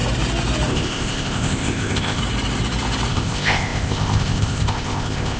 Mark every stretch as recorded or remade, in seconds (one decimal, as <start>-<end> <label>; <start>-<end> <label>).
0.0-0.7 recorded; 0.7-2.2 remade; 2.2-3.1 recorded; 3.1-5.4 remade